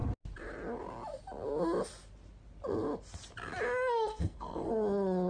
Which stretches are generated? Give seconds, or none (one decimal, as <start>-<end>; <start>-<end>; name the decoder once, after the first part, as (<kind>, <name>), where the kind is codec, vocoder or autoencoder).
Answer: 4.1-4.7 (codec, SNAC)